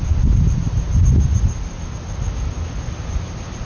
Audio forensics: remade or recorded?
recorded